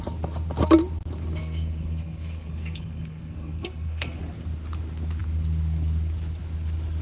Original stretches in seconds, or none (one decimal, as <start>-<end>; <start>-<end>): 0.0-1.4; 4.2-7.0